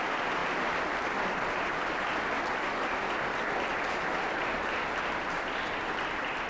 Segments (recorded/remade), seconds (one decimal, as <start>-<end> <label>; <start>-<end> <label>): 0.0-6.5 recorded